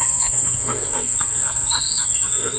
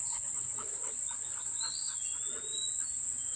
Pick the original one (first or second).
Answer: second